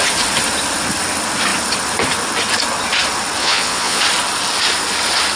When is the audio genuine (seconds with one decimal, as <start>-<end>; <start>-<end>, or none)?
0.0-3.4; 4.0-5.4